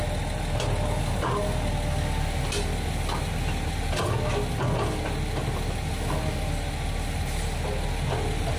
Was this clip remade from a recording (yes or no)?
no